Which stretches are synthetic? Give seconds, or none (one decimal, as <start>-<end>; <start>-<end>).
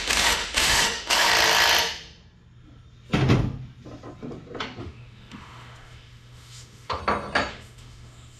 0.0-1.3; 4.8-7.0; 7.5-8.4